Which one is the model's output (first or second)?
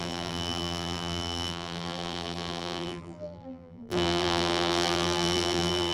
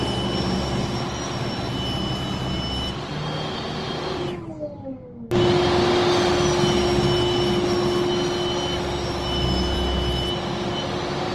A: first